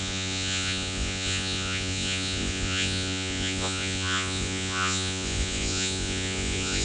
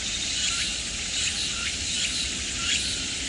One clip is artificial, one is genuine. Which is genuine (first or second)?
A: second